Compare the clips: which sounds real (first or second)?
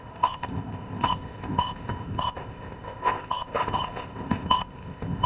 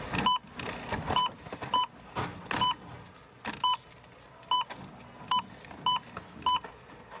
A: second